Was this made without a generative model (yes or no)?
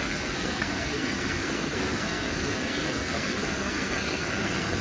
no